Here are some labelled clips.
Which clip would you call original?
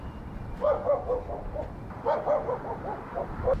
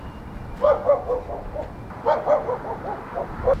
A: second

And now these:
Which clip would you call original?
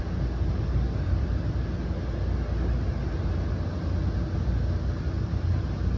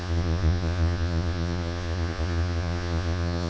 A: first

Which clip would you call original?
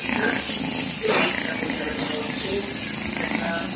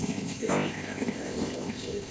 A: first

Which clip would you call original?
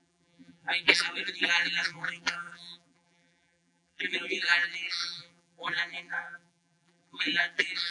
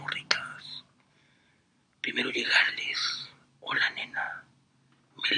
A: second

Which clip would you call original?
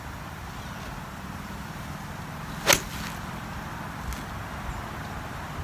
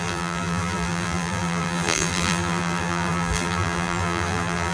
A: first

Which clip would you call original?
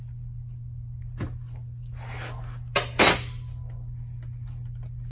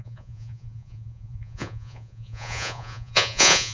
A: first